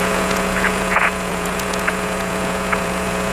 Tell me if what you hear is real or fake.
fake